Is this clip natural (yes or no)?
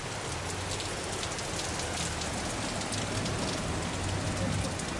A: yes